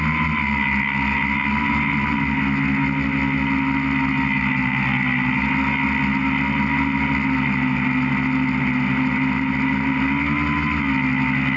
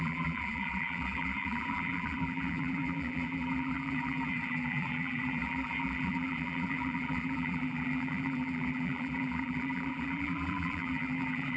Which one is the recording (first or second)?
first